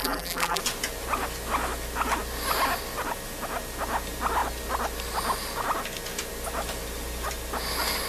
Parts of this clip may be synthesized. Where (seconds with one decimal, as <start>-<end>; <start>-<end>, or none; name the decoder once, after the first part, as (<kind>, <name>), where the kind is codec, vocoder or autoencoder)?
0.0-0.6 (vocoder, BigVGAN v2)